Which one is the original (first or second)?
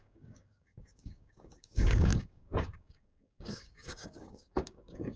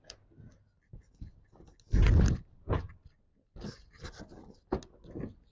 second